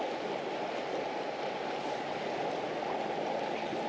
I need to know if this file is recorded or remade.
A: recorded